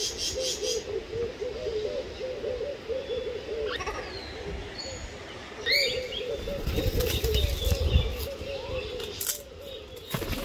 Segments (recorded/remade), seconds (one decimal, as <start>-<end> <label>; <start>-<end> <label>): 0.0-10.4 recorded